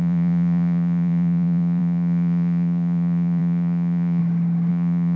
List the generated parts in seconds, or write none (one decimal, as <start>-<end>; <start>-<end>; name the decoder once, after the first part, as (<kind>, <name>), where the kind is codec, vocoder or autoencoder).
0.0-4.2 (vocoder, Vocos); 4.7-5.2